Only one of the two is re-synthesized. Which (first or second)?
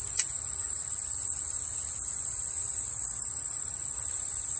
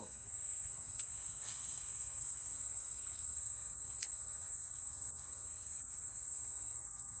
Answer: second